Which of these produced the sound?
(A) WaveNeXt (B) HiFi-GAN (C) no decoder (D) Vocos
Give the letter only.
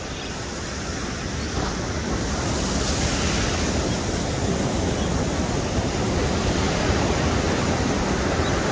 C